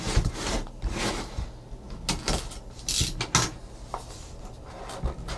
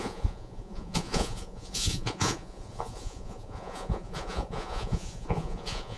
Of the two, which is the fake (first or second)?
second